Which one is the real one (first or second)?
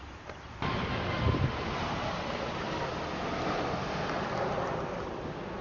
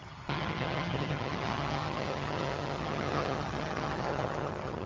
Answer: first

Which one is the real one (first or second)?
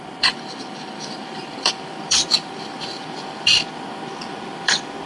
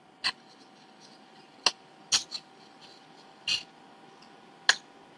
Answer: second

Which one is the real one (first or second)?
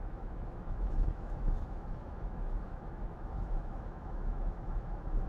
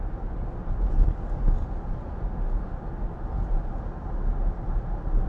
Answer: second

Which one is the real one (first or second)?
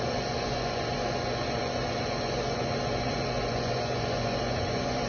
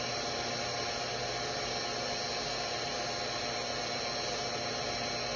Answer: second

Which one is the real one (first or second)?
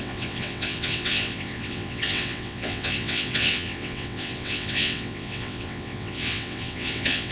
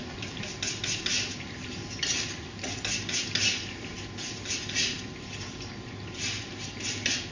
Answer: second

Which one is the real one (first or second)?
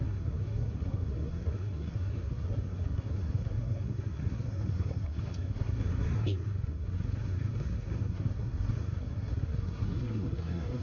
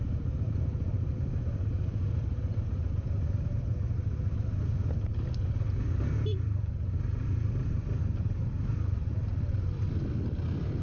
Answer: second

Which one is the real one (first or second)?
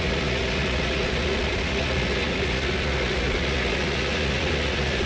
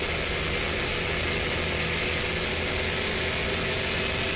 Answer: second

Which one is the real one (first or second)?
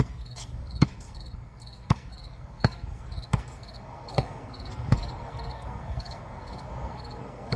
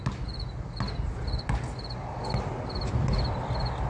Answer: second